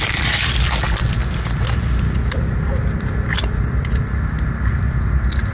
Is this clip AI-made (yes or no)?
no